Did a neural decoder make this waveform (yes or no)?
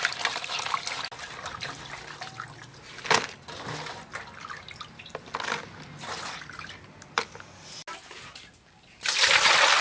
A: no